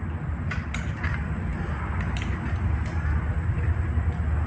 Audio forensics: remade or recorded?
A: recorded